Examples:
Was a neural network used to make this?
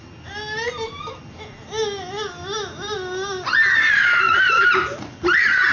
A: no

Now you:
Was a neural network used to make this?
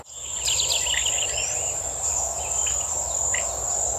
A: no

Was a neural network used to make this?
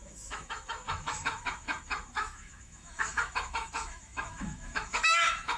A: yes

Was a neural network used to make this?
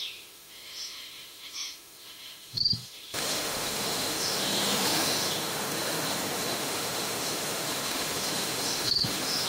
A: yes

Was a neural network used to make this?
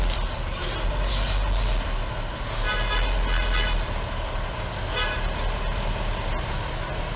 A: no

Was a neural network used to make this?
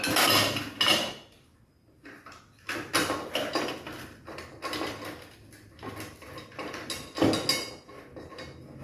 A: no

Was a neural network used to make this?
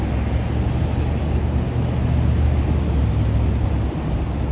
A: no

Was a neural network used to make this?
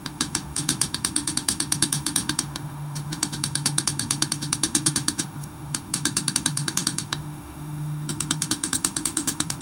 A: yes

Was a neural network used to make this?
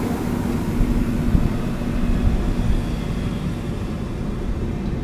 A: no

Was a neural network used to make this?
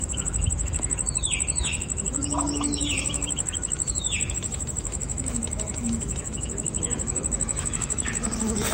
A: yes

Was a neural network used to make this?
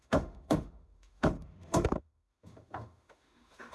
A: yes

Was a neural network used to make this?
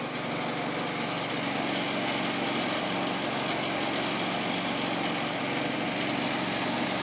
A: no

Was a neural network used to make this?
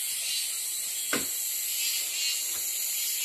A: no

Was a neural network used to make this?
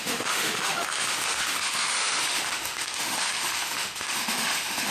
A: yes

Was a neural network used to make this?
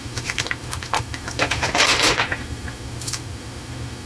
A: yes